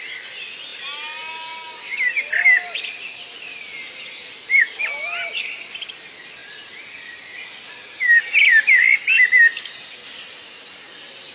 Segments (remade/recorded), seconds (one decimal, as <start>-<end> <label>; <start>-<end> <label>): 0.0-6.4 recorded; 6.4-7.7 remade; 7.7-11.3 recorded